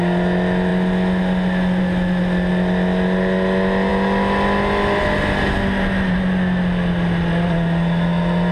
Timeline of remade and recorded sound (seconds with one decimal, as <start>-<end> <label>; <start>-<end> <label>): 0.0-8.5 recorded

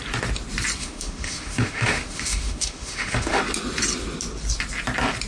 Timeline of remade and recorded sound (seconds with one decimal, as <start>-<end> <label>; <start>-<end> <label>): 0.0-0.8 recorded; 0.8-3.4 remade; 3.4-5.3 recorded

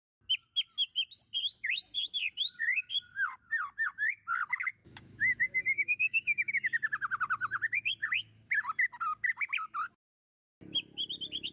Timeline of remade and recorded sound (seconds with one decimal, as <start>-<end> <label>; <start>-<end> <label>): 0.0-4.8 recorded; 4.8-6.5 remade; 6.5-11.5 recorded

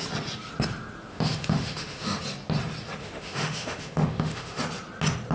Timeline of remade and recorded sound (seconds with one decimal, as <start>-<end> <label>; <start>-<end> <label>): 0.0-1.1 recorded; 1.1-2.2 remade; 2.2-3.0 recorded; 3.0-4.6 remade; 4.6-5.3 recorded

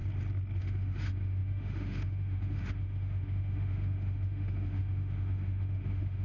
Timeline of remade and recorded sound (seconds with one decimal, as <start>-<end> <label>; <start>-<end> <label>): 0.0-0.6 recorded; 0.6-6.2 remade

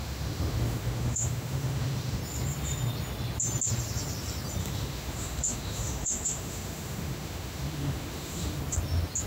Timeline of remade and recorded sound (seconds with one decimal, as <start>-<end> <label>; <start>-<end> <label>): 0.0-2.2 remade; 2.2-4.6 recorded; 4.6-8.6 remade; 8.6-9.3 recorded

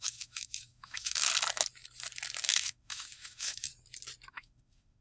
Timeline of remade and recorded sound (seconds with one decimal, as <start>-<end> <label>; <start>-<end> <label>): 0.0-1.3 remade; 1.3-2.4 recorded; 2.4-3.7 remade; 3.7-4.3 recorded; 4.3-5.0 remade

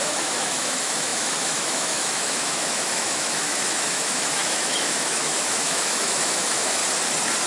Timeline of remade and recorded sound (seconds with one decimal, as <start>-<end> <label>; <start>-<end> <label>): 0.0-6.8 remade; 6.8-7.5 recorded